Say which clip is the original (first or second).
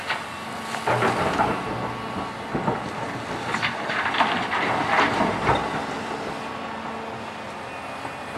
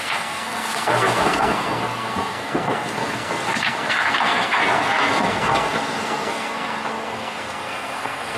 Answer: first